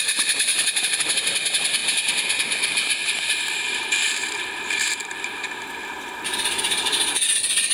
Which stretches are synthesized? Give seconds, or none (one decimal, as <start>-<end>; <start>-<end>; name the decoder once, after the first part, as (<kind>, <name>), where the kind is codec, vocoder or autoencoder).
1.8-5.8 (vocoder, BigVGAN v2)